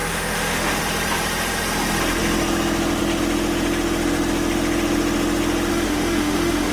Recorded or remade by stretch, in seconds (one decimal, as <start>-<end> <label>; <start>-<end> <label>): 0.0-0.8 remade; 0.8-5.7 recorded; 5.7-6.7 remade